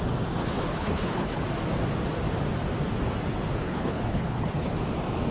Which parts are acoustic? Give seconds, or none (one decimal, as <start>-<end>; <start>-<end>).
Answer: 0.0-0.4; 1.4-3.6; 4.7-5.3